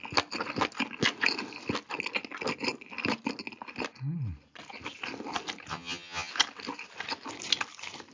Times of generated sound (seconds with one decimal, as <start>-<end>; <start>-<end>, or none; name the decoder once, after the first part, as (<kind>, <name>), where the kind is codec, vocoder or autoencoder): 5.7-6.3 (vocoder, HiFi-GAN)